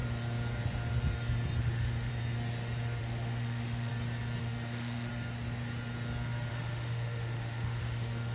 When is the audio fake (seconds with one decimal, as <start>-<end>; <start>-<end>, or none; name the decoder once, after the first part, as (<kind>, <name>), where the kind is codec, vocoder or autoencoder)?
1.6-2.1 (autoencoder, DAC-VAE); 3.0-3.9; 4.4-5.1; 6.5-8.3